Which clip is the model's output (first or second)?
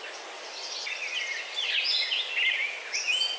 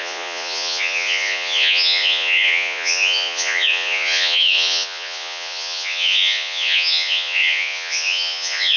second